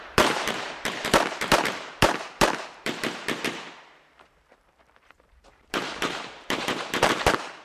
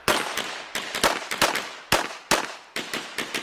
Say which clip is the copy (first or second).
first